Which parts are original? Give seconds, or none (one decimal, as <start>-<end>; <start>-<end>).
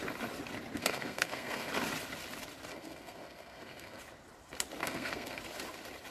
0.0-0.8; 1.7-2.7; 4.0-4.8; 5.4-6.1